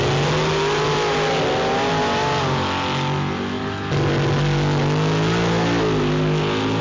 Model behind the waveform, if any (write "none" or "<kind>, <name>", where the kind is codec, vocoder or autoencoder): none